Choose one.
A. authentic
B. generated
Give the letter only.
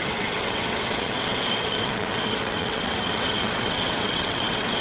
B